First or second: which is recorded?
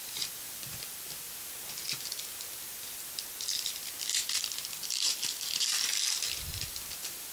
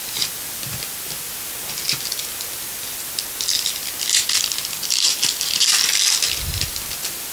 second